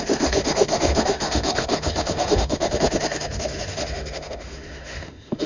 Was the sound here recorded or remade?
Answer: remade